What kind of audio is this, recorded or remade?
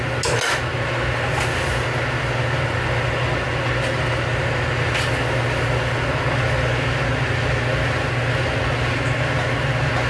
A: recorded